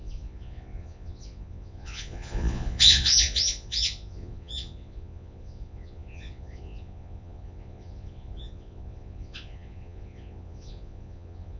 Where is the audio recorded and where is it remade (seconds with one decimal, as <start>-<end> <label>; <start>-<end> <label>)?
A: 0.0-11.6 remade